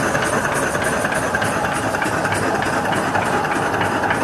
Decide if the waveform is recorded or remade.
recorded